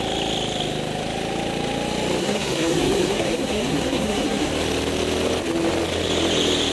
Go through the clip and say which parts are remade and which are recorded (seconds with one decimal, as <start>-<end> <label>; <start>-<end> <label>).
0.0-2.2 recorded; 2.2-4.5 remade; 4.5-6.7 recorded